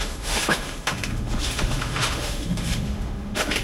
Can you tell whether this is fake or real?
fake